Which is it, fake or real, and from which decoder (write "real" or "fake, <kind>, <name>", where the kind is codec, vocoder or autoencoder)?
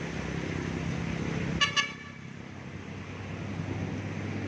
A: real